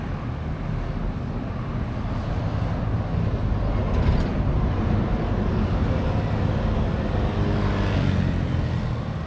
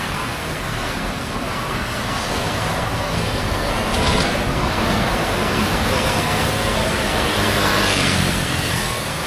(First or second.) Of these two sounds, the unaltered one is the first